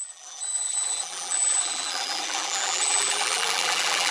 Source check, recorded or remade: remade